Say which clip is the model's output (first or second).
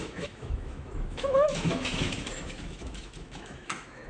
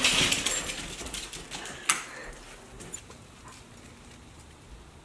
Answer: first